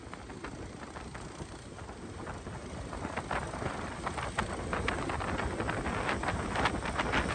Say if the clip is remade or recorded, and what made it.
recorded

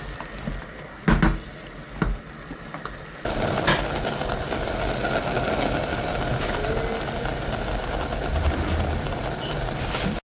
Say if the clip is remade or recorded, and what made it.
recorded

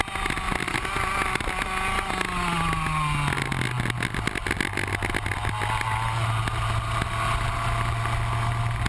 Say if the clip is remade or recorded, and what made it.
recorded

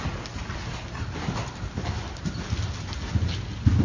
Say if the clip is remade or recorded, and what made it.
recorded